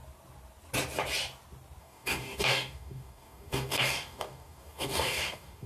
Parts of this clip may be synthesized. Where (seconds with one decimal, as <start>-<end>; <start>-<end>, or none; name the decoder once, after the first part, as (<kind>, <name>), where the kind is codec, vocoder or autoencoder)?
1.8-5.7 (codec, DAC)